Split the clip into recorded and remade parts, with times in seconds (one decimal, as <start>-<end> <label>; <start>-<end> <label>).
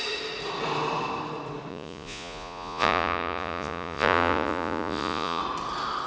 0.0-1.7 recorded; 1.7-5.4 remade; 5.4-6.1 recorded